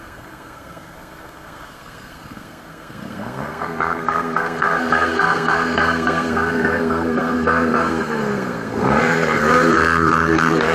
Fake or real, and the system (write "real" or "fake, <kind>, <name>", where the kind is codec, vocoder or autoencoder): fake, codec, SNAC